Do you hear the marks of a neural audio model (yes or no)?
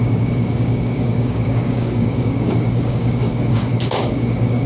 yes